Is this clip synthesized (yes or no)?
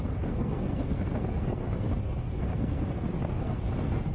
yes